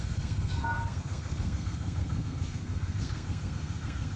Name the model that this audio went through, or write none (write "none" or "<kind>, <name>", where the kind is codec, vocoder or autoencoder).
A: codec, SNAC